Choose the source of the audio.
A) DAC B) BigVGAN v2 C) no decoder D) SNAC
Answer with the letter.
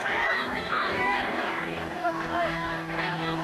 A